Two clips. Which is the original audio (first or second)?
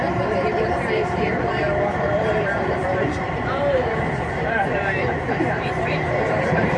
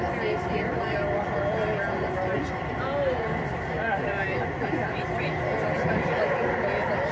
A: second